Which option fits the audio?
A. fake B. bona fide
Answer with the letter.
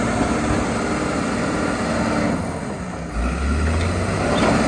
B